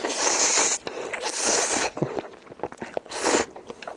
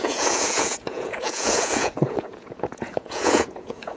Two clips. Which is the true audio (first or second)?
first